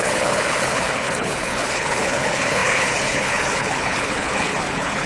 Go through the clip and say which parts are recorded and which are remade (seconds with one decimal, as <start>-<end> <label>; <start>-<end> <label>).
0.0-5.1 remade